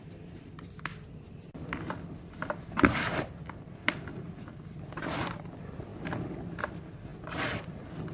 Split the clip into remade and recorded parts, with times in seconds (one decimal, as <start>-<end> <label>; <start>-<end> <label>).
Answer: 0.0-0.9 remade; 0.9-1.9 recorded; 1.9-5.9 remade; 5.9-6.6 recorded; 6.6-7.1 remade; 7.1-8.1 recorded